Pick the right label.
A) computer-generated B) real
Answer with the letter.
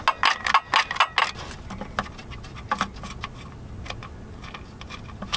B